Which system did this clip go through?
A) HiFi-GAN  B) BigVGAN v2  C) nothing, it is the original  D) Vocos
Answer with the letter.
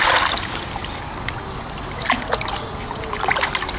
C